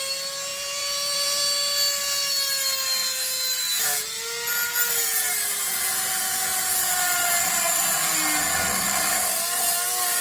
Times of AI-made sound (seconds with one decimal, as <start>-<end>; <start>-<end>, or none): 0.5-1.4